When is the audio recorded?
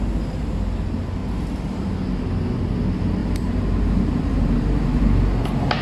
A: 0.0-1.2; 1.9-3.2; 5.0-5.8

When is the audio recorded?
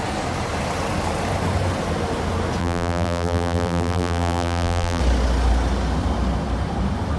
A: 0.0-2.6; 5.0-7.2